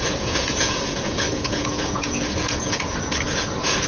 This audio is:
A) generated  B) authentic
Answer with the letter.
A